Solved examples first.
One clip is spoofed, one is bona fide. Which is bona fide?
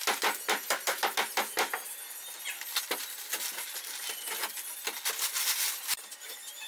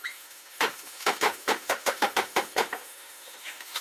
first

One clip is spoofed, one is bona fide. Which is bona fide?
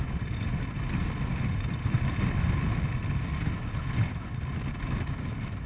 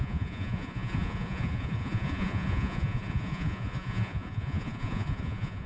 first